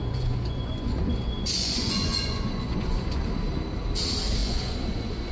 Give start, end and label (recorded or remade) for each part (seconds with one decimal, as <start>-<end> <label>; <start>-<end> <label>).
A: 0.0-3.2 remade; 3.2-4.4 recorded; 4.4-5.3 remade